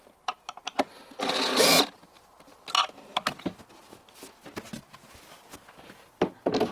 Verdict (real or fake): real